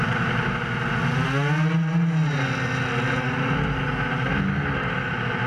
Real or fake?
real